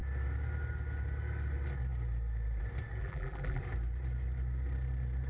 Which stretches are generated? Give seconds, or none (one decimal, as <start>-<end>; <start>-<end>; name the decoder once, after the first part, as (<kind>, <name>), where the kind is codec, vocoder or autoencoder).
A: 3.0-3.6 (vocoder, BigVGAN v2)